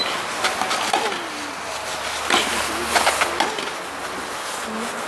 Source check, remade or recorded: recorded